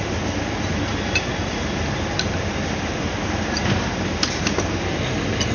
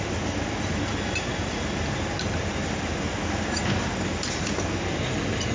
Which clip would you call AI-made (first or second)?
first